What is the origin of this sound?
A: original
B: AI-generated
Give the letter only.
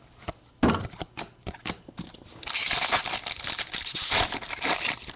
A